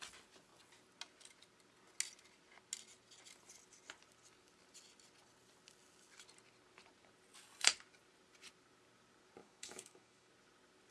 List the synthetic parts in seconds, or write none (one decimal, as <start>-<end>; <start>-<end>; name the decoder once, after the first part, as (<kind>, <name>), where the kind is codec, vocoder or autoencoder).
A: 9.4-10.3 (autoencoder, DAC-VAE)